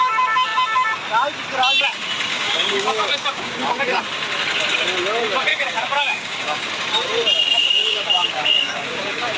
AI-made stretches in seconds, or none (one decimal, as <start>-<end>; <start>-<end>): 2.3-4.0; 5.5-6.7; 7.6-9.4